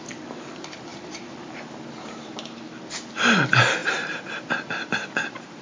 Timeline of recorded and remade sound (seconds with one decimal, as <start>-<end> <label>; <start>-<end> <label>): 0.0-0.9 recorded; 0.9-2.5 remade; 2.5-3.8 recorded; 3.8-5.6 remade

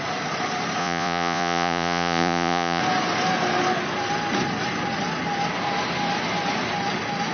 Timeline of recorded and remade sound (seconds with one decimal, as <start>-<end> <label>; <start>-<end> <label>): 0.0-0.8 recorded; 0.8-2.8 remade; 2.8-7.3 recorded

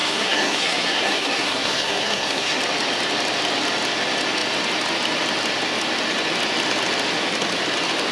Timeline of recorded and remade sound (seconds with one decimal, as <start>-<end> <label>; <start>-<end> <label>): 0.0-2.6 remade; 2.6-8.1 recorded

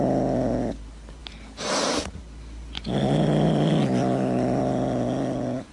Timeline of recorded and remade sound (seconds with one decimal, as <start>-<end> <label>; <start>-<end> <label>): 0.0-5.7 recorded

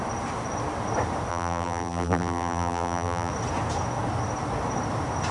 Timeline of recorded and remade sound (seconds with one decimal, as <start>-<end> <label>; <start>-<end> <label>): 0.0-1.3 recorded; 1.3-3.3 remade; 3.3-5.3 recorded

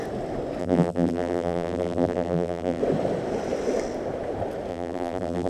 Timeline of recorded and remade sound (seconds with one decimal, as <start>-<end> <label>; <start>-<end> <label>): 0.0-0.6 recorded; 0.6-2.8 remade; 2.8-4.7 recorded; 4.7-5.5 remade

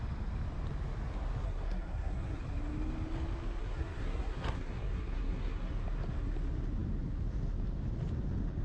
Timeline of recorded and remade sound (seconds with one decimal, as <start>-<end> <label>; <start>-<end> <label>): 0.0-1.4 recorded; 1.4-2.4 remade; 2.4-3.6 recorded; 3.6-5.7 remade; 5.7-8.6 recorded